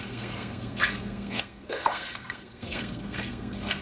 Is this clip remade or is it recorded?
remade